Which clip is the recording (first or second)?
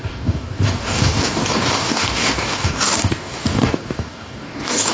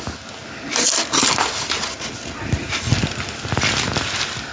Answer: second